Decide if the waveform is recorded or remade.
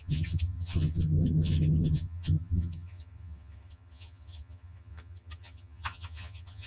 remade